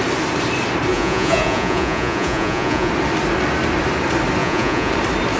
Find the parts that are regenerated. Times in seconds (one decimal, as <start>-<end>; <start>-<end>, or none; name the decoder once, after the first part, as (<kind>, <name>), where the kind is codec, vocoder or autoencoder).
0.9-2.9 (vocoder, Vocos); 4.4-4.9